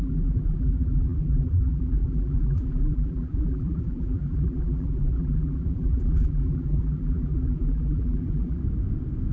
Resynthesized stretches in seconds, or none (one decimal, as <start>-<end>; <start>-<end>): 0.0-8.6